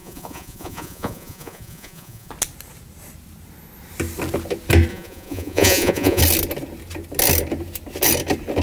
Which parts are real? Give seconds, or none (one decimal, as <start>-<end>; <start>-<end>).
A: 2.3-4.9; 6.2-8.6